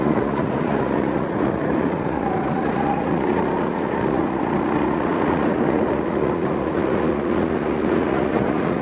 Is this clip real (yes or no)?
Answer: no